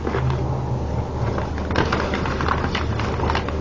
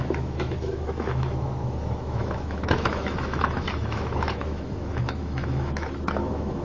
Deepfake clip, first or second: second